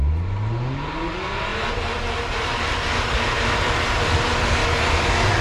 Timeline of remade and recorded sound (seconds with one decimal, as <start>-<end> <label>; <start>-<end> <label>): 0.0-5.4 recorded